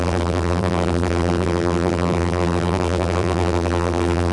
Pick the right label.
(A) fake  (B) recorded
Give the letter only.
A